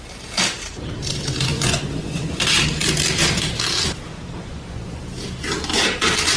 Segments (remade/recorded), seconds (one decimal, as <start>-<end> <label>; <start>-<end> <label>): 0.0-1.5 recorded; 1.5-2.4 remade; 2.4-4.4 recorded; 4.4-5.0 remade; 5.0-6.4 recorded